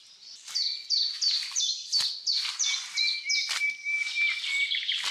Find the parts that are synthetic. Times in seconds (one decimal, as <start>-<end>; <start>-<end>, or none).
none